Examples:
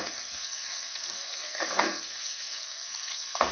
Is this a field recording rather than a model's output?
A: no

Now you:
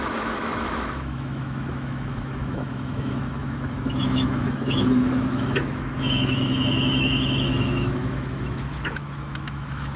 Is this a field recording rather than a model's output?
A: no